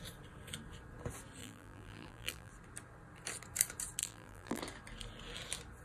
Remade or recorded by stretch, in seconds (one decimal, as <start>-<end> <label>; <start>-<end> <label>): 0.0-1.4 recorded; 1.4-2.5 remade; 2.5-4.0 recorded; 4.0-4.6 remade; 4.6-5.8 recorded